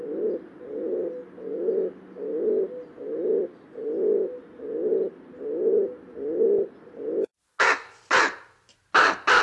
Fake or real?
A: real